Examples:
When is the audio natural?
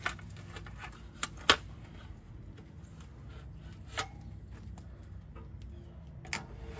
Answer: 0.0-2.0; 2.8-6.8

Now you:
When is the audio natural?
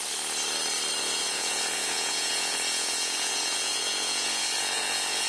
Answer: 0.0-1.0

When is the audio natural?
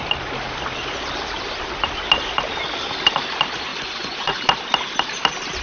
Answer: 0.0-3.7; 4.4-5.6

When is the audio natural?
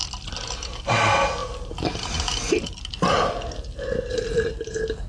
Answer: 0.0-5.1